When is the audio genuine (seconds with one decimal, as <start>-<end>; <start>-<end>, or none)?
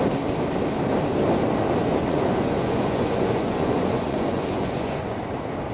0.0-1.8; 5.2-5.7